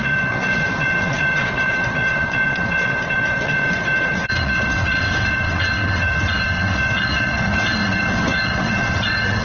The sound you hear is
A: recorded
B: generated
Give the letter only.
B